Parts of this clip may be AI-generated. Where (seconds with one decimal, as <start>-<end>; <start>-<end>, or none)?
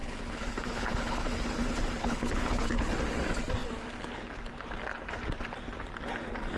0.0-1.2; 2.0-2.9